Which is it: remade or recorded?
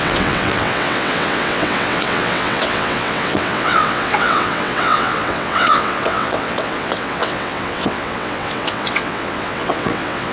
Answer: remade